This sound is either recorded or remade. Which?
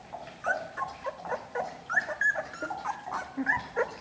recorded